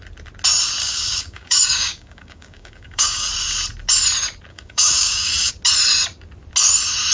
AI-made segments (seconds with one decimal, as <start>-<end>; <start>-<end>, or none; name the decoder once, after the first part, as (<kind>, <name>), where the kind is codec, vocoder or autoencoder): 0.8-3.3 (codec, DAC); 4.5-5.5